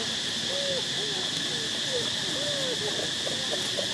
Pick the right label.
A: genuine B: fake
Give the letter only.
A